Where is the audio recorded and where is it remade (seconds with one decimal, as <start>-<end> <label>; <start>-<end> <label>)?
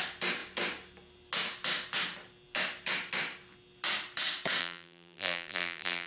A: 0.0-4.6 recorded; 4.6-6.1 remade